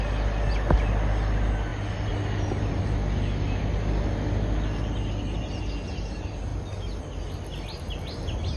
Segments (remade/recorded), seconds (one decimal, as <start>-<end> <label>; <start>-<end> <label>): 0.0-8.6 recorded